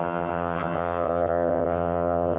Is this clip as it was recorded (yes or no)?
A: no